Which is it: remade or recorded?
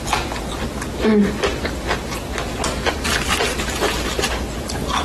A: recorded